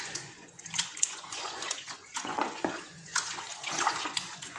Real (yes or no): no